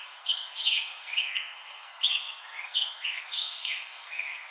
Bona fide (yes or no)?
no